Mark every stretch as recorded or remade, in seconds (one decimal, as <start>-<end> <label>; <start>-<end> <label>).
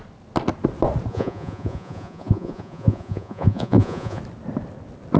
0.0-1.1 recorded; 1.1-4.2 remade; 4.2-5.2 recorded